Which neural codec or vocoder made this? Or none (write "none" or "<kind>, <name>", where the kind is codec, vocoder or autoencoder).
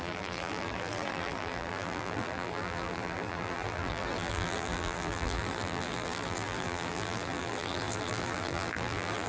vocoder, BigVGAN v2